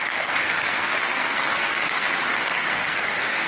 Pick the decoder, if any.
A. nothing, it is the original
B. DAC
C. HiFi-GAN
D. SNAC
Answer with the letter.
D